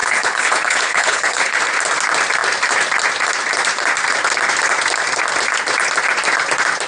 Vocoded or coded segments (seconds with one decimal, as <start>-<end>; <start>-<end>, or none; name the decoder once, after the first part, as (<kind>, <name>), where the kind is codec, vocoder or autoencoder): 0.0-1.6 (codec, HILCodec)